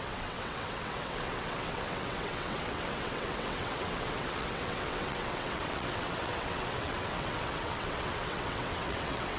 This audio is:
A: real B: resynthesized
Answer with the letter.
B